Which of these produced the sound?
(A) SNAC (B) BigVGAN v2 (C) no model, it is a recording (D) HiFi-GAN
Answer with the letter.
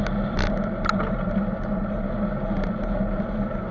C